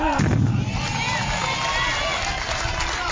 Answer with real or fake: real